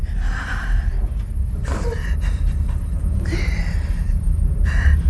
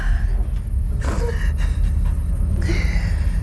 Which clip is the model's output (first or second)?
first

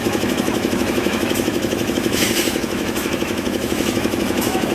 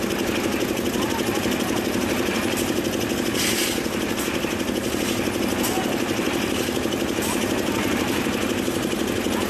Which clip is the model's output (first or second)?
first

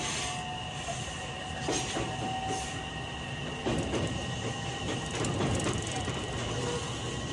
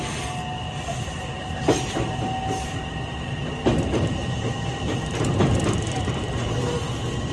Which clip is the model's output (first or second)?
second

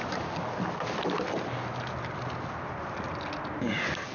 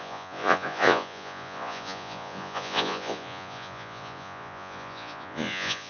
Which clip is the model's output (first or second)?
second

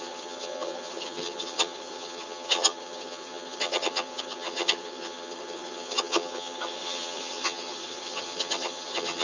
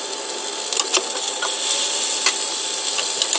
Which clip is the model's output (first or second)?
first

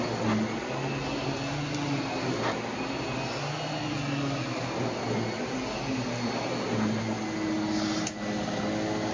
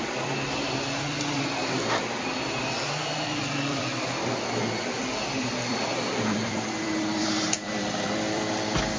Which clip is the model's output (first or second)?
second